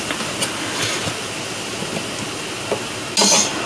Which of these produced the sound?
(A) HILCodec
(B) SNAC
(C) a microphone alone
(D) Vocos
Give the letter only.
C